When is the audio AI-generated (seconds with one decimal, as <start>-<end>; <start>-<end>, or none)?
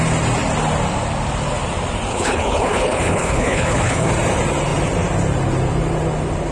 2.1-4.1